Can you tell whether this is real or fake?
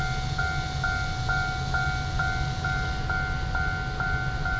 real